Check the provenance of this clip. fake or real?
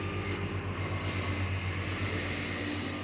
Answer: real